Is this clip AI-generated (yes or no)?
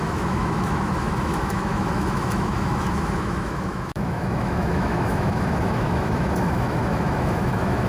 yes